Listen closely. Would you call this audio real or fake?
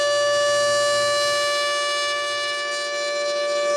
real